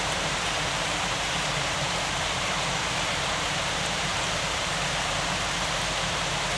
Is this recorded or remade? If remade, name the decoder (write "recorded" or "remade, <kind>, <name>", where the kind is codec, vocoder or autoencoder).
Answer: remade, vocoder, BigVGAN v2